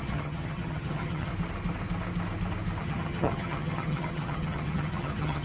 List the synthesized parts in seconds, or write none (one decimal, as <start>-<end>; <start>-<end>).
0.0-1.3; 2.8-5.4